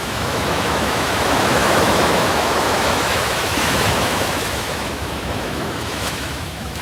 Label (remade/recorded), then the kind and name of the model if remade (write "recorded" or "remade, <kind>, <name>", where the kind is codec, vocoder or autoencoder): remade, autoencoder, DAC-VAE